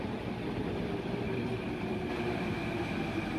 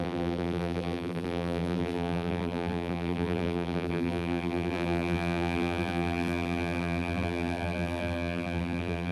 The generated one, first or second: second